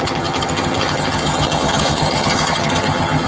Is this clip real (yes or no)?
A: no